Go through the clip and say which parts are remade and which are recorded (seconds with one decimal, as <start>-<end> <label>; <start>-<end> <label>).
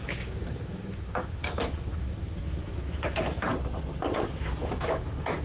0.0-3.5 remade; 3.5-4.3 recorded; 4.3-5.4 remade